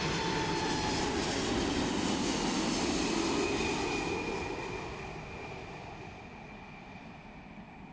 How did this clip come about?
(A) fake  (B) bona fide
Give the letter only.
B